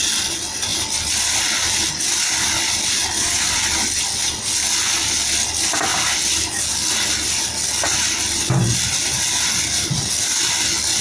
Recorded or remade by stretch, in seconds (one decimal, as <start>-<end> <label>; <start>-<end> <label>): 0.0-11.0 recorded